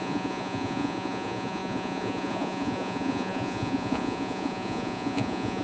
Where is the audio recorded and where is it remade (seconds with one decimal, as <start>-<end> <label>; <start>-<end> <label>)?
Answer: 0.0-5.6 remade